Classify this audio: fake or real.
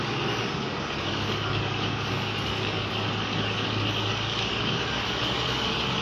fake